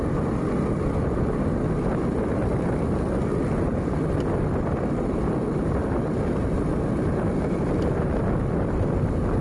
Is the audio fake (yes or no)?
no